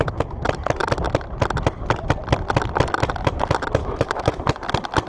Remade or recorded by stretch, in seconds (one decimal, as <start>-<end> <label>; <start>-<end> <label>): 0.0-3.8 recorded; 3.8-4.4 remade; 4.4-5.1 recorded